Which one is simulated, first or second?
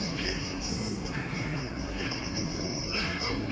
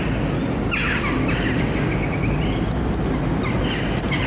first